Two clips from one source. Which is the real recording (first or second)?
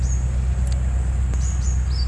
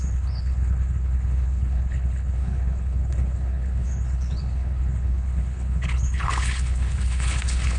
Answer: first